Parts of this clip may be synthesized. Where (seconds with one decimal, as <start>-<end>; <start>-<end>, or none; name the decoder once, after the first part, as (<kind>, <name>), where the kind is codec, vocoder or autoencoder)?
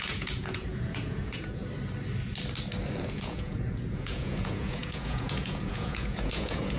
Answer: 0.0-1.6 (vocoder, Vocos); 3.1-6.8